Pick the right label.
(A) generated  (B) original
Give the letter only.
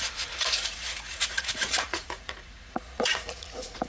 A